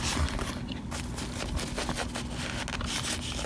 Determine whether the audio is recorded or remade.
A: recorded